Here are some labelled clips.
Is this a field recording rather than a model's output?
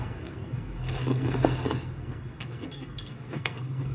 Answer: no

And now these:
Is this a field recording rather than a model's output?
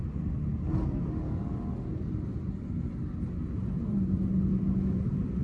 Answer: yes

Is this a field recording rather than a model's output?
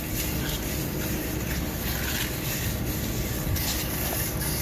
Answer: yes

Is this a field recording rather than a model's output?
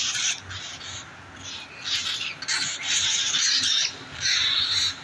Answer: yes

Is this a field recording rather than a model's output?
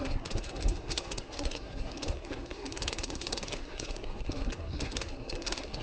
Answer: no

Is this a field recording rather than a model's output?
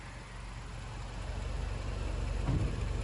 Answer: yes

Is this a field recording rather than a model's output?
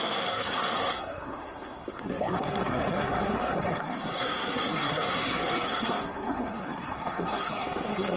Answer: no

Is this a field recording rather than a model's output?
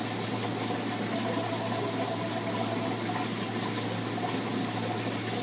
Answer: yes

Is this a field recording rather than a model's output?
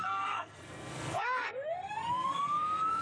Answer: no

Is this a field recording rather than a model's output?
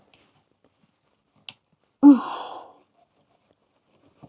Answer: yes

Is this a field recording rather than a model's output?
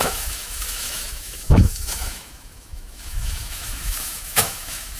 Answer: no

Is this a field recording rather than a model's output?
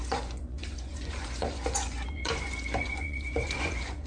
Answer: no